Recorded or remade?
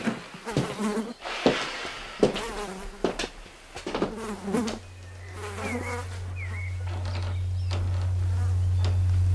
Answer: recorded